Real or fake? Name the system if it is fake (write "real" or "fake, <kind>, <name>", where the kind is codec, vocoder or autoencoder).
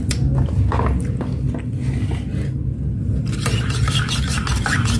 real